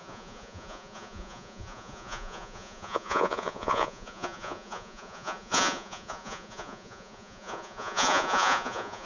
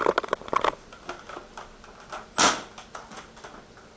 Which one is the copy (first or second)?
first